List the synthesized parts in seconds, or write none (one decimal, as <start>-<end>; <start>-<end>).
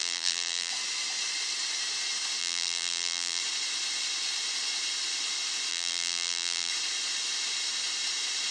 0.0-0.7; 2.4-3.4; 5.7-6.7